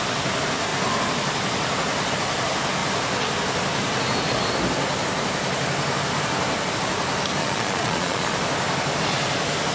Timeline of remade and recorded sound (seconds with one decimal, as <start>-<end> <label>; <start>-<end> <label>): 0.0-7.4 recorded; 7.4-8.3 remade; 8.3-9.7 recorded